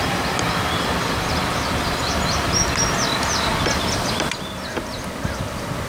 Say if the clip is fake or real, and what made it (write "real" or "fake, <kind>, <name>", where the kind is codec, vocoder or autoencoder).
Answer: real